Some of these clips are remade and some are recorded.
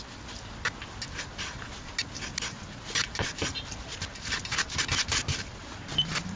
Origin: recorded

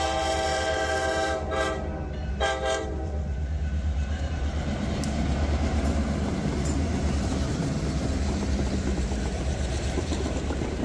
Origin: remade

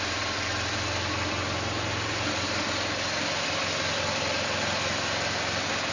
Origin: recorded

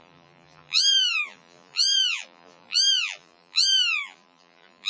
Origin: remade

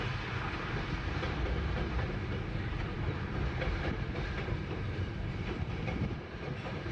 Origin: remade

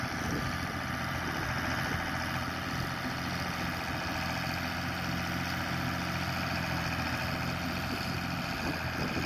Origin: recorded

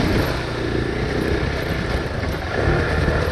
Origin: remade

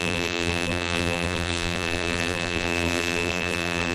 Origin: remade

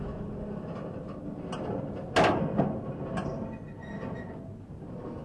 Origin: recorded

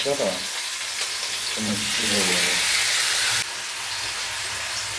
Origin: recorded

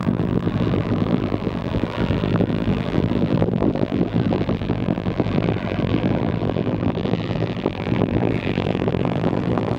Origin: remade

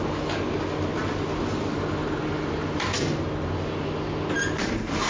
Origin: recorded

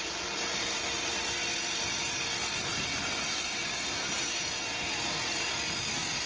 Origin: recorded